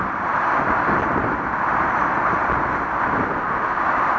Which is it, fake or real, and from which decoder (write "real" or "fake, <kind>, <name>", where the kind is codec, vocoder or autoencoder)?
real